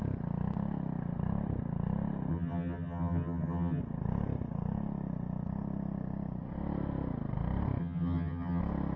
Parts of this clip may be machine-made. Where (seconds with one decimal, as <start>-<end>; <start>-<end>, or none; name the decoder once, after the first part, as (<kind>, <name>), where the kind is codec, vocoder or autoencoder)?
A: 2.3-3.8 (vocoder, HiFi-GAN); 7.8-8.6

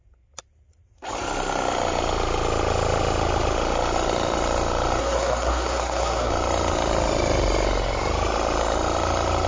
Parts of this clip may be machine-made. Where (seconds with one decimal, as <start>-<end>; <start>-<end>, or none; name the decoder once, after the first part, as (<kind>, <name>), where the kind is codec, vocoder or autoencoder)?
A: 5.0-6.3 (codec, SNAC)

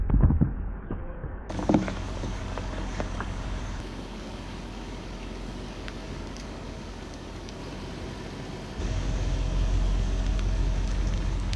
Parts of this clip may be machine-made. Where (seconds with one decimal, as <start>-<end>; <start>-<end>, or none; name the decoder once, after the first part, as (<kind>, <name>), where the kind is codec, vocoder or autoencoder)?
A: 0.0-7.6 (codec, DAC); 8.8-11.6

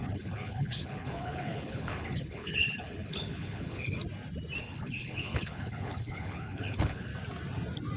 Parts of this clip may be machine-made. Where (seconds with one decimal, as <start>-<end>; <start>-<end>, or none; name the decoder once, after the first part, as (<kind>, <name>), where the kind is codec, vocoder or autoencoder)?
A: 0.0-4.0 (codec, HILCodec); 4.6-7.1

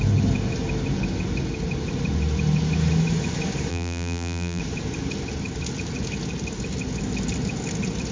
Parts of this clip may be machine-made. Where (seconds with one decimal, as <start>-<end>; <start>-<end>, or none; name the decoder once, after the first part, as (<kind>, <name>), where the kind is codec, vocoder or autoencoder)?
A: 3.7-4.6 (vocoder, BigVGAN v2)

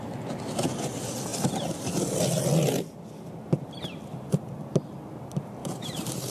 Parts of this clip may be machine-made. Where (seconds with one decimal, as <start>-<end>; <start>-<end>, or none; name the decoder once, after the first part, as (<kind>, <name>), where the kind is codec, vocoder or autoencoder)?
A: 5.6-6.3 (vocoder, BigVGAN v2)

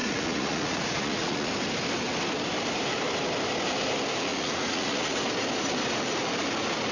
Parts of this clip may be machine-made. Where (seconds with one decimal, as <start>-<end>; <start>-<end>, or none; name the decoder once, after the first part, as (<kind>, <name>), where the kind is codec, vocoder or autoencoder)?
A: 0.0-1.5 (vocoder, Vocos); 4.3-5.2